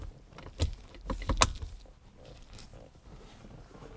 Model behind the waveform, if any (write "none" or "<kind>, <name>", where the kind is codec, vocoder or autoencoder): none